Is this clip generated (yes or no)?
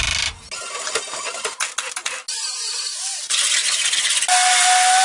no